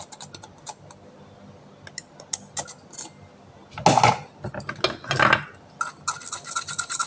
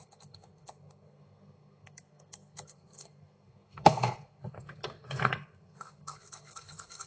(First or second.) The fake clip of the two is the second